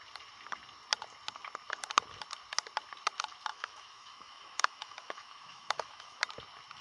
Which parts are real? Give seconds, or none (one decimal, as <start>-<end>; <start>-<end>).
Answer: 0.0-3.5; 6.2-6.8